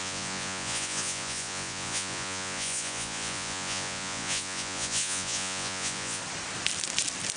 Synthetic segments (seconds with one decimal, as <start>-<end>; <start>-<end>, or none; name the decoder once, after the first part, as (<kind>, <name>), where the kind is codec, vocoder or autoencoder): 0.0-6.2 (vocoder, Vocos)